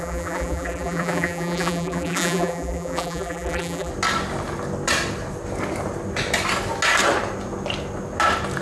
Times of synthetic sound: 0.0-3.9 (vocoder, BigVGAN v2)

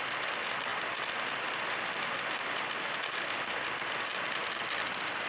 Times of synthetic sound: none

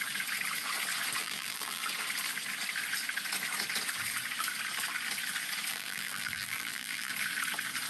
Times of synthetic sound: 1.2-1.8 (vocoder, BigVGAN v2); 5.7-7.1